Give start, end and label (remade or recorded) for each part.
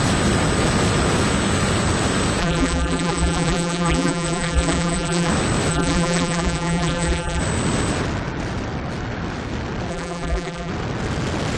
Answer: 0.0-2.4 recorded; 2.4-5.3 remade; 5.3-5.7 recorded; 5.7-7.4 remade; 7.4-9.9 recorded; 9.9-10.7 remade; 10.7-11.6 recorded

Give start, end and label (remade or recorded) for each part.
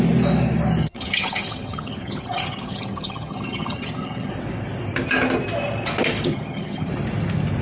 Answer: 0.0-0.8 recorded; 0.8-4.3 remade; 4.3-6.3 recorded; 6.3-6.9 remade; 6.9-7.6 recorded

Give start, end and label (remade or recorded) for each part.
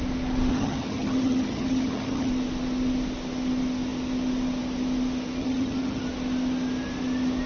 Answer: 0.0-0.5 recorded; 0.5-2.3 remade; 2.3-5.4 recorded; 5.4-6.0 remade; 6.0-7.5 recorded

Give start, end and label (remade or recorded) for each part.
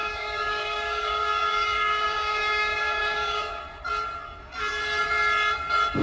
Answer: 0.0-3.6 remade; 3.6-6.0 recorded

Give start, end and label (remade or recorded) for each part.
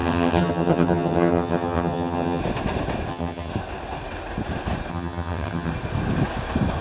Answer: 0.0-2.4 remade; 2.4-3.1 recorded; 3.1-3.5 remade; 3.5-4.9 recorded; 4.9-5.7 remade; 5.7-6.8 recorded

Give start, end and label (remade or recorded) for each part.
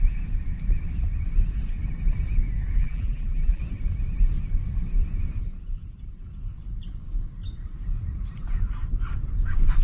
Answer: 0.0-2.8 recorded; 2.8-3.6 remade; 3.6-9.8 recorded